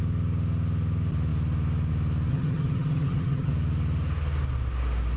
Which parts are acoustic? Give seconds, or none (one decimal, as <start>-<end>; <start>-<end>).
0.0-2.3; 3.5-5.2